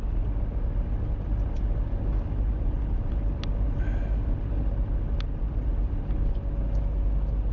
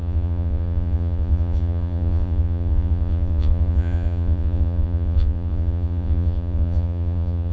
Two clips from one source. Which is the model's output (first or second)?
second